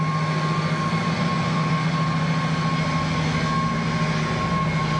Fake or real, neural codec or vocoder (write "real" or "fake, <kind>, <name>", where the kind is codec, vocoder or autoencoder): real